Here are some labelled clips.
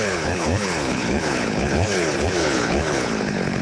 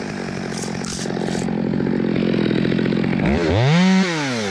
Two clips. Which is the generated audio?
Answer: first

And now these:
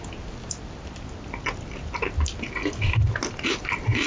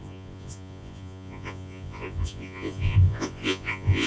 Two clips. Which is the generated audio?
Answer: second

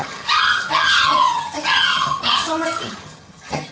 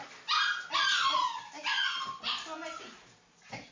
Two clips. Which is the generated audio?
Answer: first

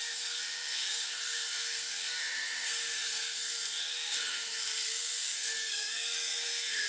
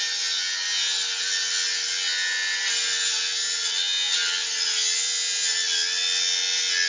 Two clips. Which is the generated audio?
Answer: first